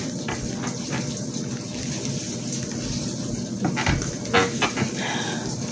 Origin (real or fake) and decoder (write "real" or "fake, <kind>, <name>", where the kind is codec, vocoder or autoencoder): real